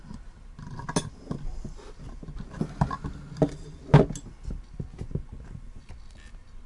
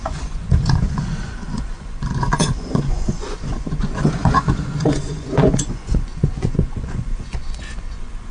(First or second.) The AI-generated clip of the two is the second